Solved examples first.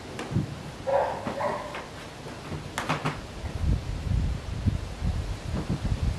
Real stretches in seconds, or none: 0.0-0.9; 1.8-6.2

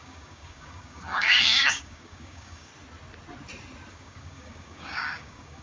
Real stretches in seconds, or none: 2.7-3.9